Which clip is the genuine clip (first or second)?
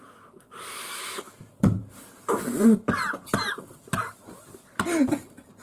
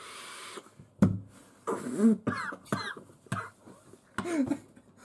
second